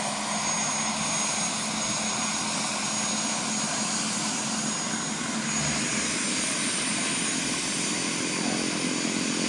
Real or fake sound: real